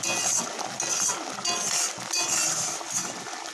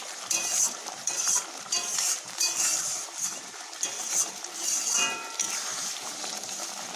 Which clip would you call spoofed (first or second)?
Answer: second